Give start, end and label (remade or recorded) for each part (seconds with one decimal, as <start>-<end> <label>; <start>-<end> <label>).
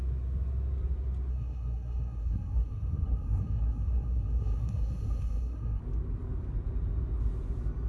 0.0-1.3 recorded; 1.3-5.8 remade; 5.8-7.9 recorded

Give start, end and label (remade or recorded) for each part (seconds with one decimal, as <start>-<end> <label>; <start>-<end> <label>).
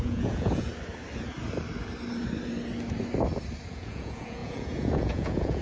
0.0-0.7 remade; 0.7-3.7 recorded; 3.7-5.6 remade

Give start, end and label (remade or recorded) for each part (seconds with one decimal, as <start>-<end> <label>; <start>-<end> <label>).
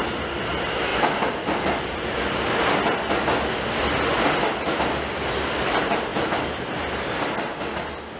0.0-8.2 recorded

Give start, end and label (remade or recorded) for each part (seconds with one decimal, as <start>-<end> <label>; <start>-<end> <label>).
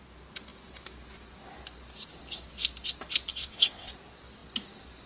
0.0-3.3 recorded; 3.3-3.9 remade; 3.9-5.1 recorded